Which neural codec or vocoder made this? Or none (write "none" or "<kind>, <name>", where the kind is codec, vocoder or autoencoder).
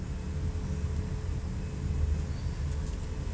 none